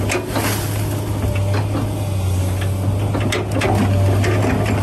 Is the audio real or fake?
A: real